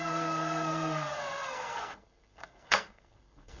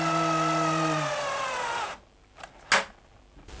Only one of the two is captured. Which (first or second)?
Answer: second